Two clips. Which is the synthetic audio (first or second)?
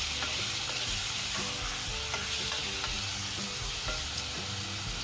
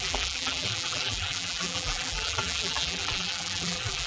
second